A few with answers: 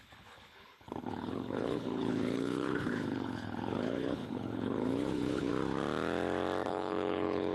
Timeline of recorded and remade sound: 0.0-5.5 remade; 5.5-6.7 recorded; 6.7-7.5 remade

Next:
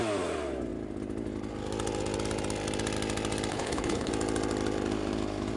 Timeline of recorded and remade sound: 0.0-3.5 recorded; 3.5-4.1 remade; 4.1-5.6 recorded